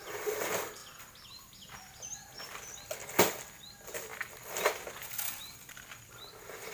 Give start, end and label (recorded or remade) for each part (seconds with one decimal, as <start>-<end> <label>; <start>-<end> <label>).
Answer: 0.0-6.7 recorded